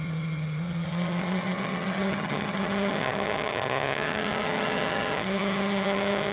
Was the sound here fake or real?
fake